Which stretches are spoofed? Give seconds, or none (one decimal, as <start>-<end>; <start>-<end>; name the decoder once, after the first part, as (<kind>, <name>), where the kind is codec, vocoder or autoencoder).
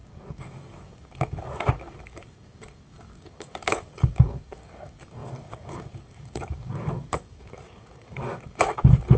0.0-9.2 (codec, DAC)